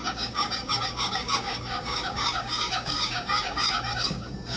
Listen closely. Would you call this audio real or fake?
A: fake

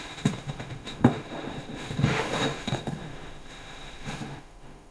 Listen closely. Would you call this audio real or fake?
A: fake